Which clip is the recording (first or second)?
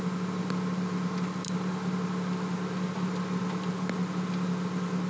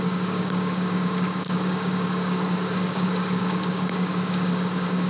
first